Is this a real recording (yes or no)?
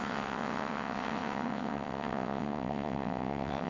no